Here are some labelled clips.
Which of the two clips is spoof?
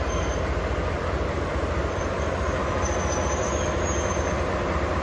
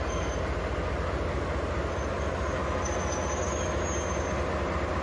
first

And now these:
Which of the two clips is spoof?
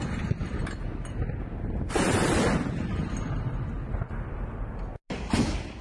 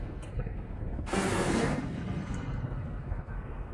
second